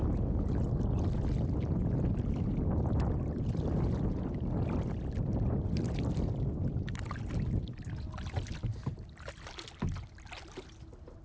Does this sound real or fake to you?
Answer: real